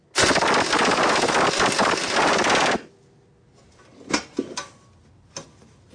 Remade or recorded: recorded